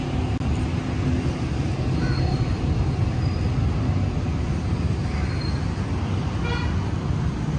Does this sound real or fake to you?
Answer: real